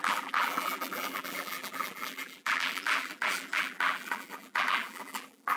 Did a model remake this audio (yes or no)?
yes